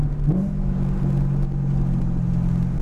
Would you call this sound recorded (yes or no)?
yes